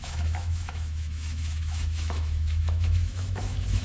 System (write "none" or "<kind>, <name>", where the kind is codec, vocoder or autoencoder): autoencoder, DAC-VAE